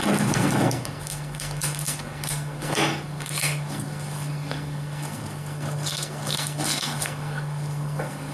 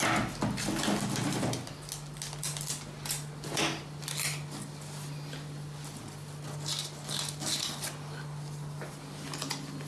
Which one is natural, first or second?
second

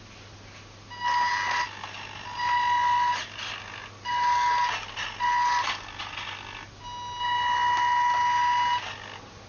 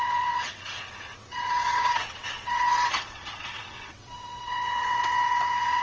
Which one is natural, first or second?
first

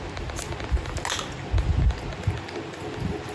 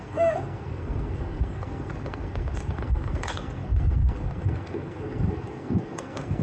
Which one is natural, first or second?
first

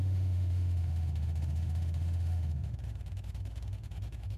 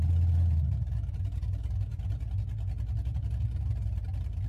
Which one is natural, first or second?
second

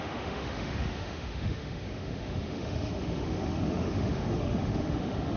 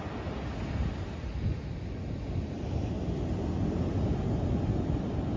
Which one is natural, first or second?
second